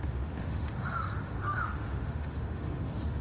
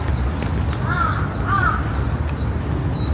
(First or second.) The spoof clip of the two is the first